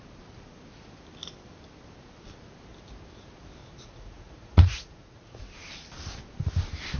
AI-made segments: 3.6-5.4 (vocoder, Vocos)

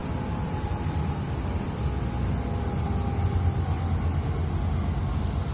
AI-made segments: 0.0-1.8 (vocoder, BigVGAN v2)

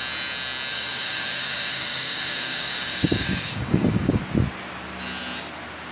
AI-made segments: 0.7-4.2 (codec, DAC)

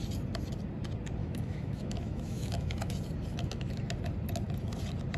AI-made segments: 1.2-2.9 (autoencoder, DAC-VAE); 3.3-3.8

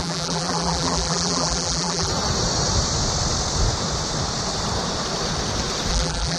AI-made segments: 0.0-2.1 (vocoder, BigVGAN v2); 5.9-6.4

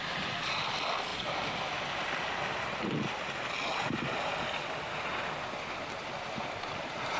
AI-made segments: none